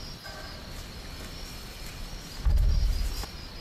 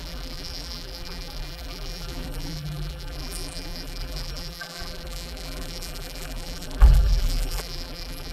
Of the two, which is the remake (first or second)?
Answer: second